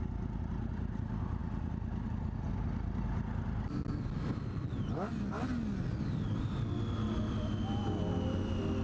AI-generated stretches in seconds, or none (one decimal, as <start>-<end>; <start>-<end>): none